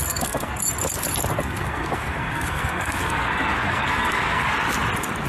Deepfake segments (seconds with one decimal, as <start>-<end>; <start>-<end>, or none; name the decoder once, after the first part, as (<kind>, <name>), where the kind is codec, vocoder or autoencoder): 0.0-0.6 (codec, SNAC); 1.3-4.5